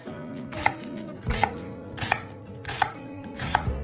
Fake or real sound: fake